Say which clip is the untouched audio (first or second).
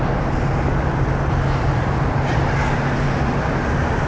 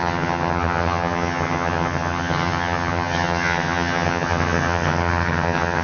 first